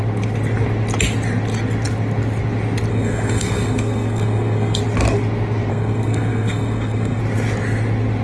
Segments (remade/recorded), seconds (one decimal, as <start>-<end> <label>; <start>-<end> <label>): 0.0-2.9 recorded; 2.9-4.8 remade; 4.8-5.7 recorded; 5.7-7.2 remade; 7.2-8.2 recorded